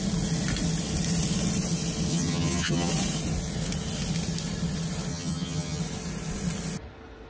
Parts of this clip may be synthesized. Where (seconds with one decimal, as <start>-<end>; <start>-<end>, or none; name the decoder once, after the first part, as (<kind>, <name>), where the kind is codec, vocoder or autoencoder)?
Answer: 2.1-2.9 (vocoder, HiFi-GAN); 5.1-5.8